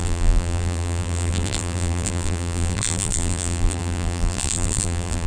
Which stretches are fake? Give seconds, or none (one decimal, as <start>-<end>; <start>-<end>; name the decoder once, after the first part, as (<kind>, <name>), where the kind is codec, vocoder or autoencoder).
0.0-5.3 (vocoder, BigVGAN v2)